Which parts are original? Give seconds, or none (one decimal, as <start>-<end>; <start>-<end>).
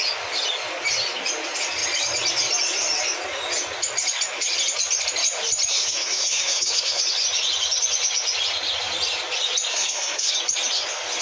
0.0-5.7; 7.0-9.7; 10.3-11.2